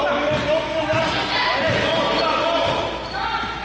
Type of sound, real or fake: real